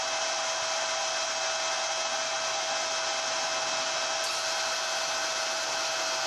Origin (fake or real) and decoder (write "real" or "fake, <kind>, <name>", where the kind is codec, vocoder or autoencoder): real